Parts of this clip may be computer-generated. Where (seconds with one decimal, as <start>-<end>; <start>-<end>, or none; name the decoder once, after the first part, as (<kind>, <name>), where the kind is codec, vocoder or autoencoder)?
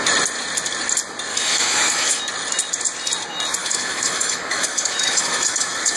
1.3-2.2 (autoencoder, DAC-VAE); 3.6-6.0